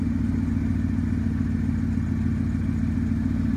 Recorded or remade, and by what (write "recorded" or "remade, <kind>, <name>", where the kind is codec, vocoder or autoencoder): recorded